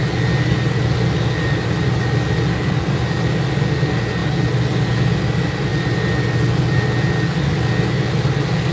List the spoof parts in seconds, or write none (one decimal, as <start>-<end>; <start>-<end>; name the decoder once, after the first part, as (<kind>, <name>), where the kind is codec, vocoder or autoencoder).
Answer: none